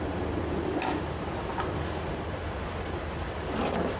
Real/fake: real